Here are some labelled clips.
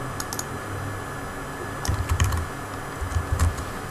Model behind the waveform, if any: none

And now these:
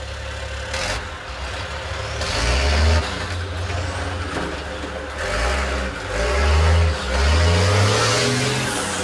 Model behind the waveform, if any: none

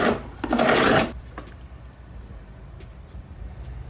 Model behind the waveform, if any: none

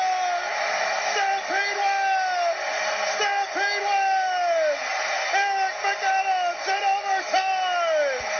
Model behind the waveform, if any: none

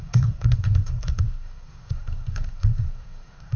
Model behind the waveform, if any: codec, SNAC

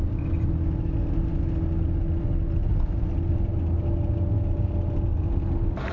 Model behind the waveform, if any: none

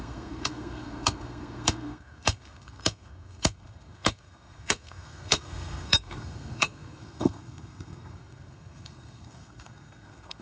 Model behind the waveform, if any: codec, SNAC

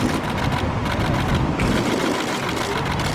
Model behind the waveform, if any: none